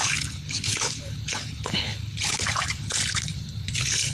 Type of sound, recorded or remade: remade